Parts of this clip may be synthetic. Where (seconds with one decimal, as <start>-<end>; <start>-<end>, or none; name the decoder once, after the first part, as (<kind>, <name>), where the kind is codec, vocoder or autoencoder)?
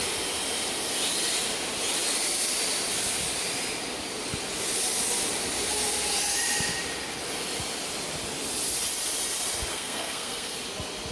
9.7-10.6 (codec, SNAC)